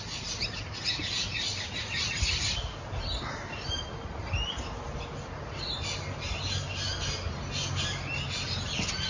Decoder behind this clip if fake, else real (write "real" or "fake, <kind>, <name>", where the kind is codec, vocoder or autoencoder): real